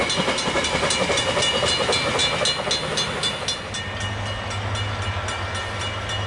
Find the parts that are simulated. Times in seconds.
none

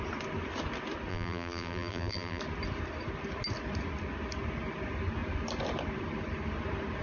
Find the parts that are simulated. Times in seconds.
1.1-2.4 (vocoder, BigVGAN v2)

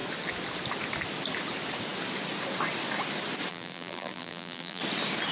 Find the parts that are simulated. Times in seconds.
3.5-4.8 (vocoder, BigVGAN v2)

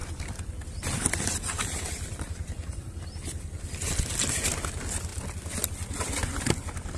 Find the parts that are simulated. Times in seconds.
0.0-4.2 (vocoder, BigVGAN v2)